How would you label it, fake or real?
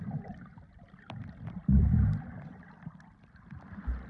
real